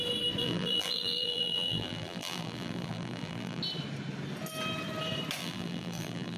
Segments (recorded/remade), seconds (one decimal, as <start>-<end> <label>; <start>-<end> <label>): 0.0-0.4 recorded; 0.4-3.6 remade; 3.6-5.4 recorded; 5.4-6.4 remade